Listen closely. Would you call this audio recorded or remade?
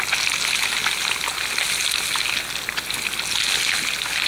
recorded